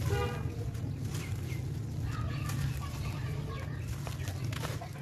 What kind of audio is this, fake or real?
real